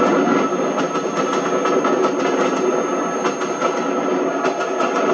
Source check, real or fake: real